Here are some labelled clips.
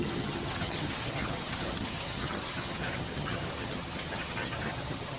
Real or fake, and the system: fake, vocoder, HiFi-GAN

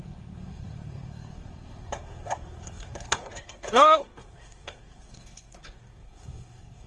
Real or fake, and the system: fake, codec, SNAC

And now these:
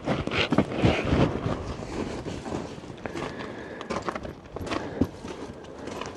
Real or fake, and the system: real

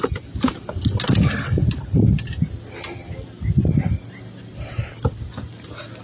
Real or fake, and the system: real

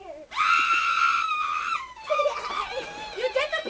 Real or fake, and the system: real